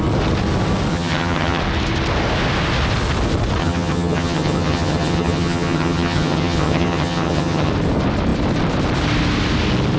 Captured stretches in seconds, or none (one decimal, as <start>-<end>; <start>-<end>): 0.0-0.9; 1.6-3.6; 7.7-10.0